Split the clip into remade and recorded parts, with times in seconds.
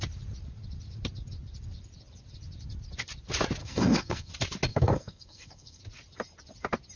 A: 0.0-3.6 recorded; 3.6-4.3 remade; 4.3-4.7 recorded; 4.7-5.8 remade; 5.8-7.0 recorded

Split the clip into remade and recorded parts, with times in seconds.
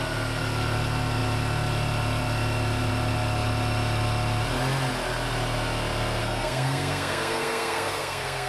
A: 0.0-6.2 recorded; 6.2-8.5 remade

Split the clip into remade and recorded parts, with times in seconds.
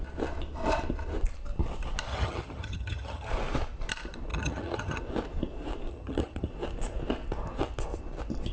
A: 0.0-2.1 recorded; 2.1-3.3 remade; 3.3-4.3 recorded; 4.3-5.0 remade; 5.0-5.9 recorded; 5.9-6.5 remade; 6.5-8.5 recorded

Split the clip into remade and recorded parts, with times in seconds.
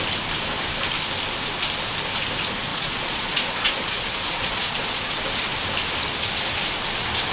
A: 0.0-2.7 recorded; 2.7-5.5 remade; 5.5-7.3 recorded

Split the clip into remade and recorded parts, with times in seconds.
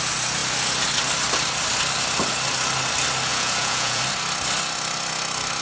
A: 0.0-3.3 recorded; 3.3-4.0 remade; 4.0-5.6 recorded